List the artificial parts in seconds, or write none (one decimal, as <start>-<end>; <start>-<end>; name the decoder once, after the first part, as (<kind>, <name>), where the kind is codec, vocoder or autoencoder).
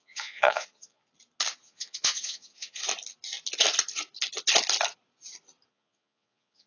0.0-1.0 (vocoder, Vocos); 1.6-2.8; 5.7-6.7